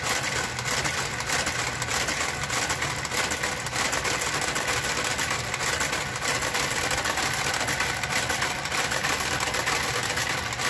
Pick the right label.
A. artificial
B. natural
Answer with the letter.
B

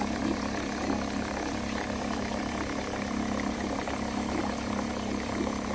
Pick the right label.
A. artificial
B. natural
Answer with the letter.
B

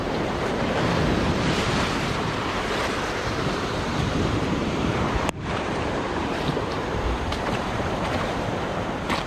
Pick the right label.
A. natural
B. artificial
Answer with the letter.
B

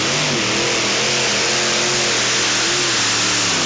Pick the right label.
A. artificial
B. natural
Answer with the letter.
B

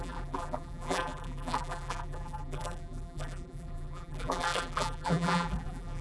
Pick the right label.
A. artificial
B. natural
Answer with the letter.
A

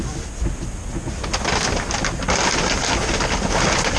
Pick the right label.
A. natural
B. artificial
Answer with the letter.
A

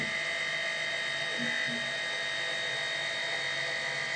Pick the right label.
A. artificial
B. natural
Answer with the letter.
B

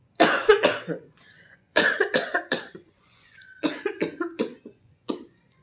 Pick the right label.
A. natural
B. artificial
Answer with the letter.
B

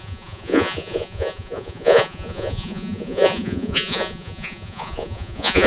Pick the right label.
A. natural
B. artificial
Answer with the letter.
B